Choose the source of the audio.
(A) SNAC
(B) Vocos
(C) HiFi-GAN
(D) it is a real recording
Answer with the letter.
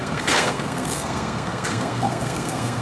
A